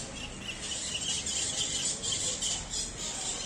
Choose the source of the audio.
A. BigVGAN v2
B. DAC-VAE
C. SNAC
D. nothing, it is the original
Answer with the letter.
D